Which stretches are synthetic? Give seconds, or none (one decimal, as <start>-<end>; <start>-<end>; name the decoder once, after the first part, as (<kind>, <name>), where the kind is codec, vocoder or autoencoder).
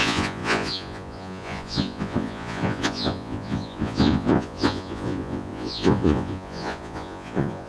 0.0-7.7 (vocoder, Vocos)